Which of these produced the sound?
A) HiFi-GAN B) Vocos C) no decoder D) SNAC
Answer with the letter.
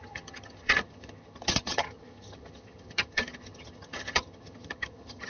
A